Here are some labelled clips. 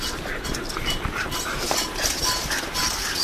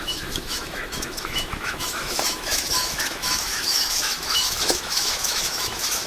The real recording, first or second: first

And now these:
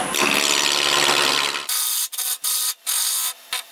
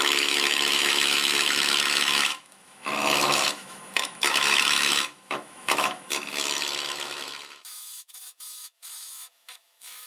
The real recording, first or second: first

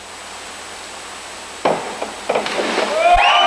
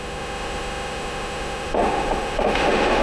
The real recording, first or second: first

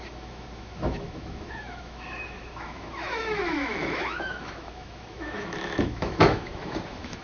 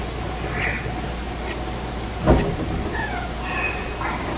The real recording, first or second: second